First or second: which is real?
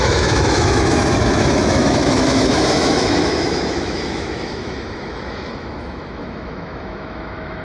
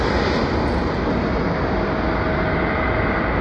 second